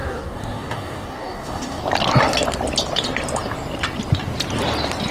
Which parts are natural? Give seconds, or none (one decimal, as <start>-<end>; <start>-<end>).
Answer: 1.8-5.1